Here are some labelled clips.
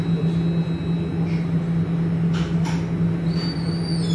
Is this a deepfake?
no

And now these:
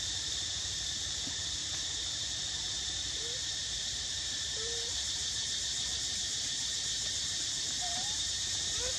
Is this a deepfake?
yes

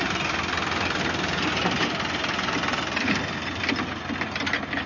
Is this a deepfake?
no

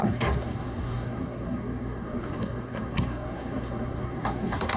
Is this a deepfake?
yes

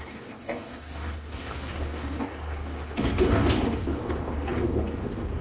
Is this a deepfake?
yes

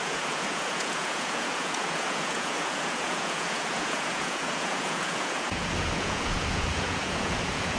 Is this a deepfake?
yes